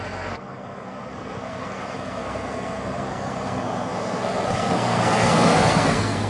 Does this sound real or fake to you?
fake